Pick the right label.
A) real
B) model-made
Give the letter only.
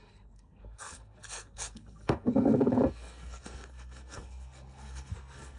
B